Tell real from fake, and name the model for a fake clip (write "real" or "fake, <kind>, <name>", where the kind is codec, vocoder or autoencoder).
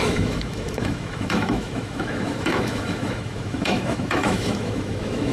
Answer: fake, autoencoder, DAC-VAE